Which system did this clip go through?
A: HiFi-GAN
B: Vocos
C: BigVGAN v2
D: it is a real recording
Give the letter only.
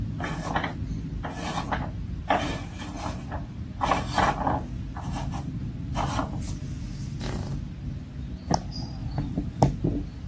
D